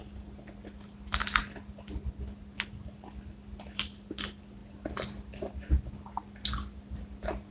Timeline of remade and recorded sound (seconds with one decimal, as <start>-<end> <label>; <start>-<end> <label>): 0.0-7.5 recorded